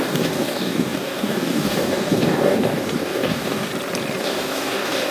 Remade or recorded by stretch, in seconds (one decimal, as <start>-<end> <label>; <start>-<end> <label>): 0.0-3.7 remade; 3.7-4.2 recorded; 4.2-5.1 remade